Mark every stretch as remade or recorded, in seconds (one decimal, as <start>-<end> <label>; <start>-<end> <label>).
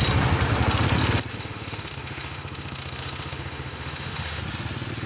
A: 0.0-1.3 recorded; 1.3-4.4 remade; 4.4-5.1 recorded